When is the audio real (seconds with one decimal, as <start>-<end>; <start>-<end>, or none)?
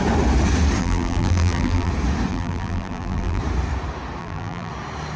0.0-0.8; 1.9-2.3; 3.4-4.2; 4.7-5.2